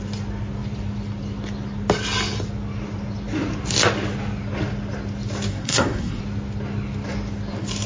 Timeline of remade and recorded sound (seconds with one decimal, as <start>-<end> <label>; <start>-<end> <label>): 0.0-5.5 recorded; 5.5-6.2 remade; 6.2-7.9 recorded